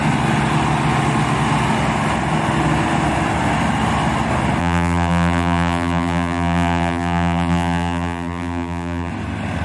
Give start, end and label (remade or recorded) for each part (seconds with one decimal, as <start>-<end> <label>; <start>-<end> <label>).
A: 0.0-4.6 recorded; 4.6-9.1 remade; 9.1-9.6 recorded